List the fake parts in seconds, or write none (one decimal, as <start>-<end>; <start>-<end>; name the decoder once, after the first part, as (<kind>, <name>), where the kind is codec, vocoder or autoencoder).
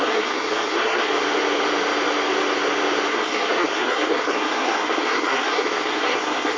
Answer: 0.0-1.1 (codec, SNAC); 3.1-6.6